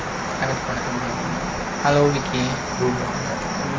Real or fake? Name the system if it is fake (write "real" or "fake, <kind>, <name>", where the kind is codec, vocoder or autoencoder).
real